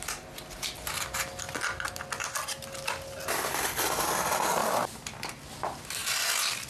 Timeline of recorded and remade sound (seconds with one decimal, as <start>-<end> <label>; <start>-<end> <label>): 0.0-6.7 recorded